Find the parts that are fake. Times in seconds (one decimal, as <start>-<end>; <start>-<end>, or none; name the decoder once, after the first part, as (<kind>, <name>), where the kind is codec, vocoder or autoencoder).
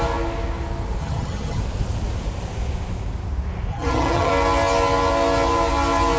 1.0-1.6 (vocoder, HiFi-GAN); 3.7-4.3